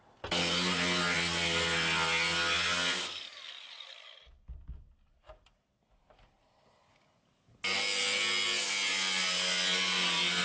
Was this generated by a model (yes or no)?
no